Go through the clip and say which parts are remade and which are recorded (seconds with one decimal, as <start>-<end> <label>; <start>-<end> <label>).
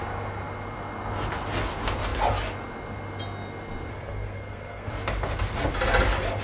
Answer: 0.0-3.9 recorded; 3.9-4.9 remade; 4.9-6.4 recorded